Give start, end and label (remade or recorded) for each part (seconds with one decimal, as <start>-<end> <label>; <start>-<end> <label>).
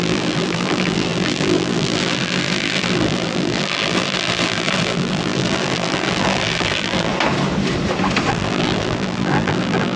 0.0-7.1 remade; 7.1-8.3 recorded; 8.3-10.0 remade